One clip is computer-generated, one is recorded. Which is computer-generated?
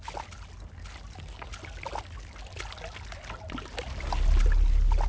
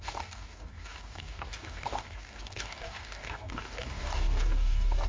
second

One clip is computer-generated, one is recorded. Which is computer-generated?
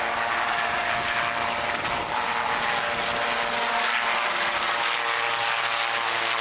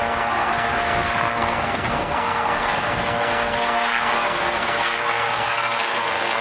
second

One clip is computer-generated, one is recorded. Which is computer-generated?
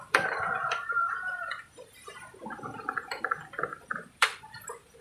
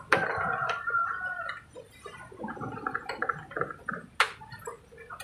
first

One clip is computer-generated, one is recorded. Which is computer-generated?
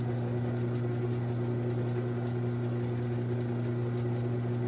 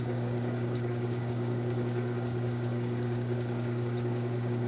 second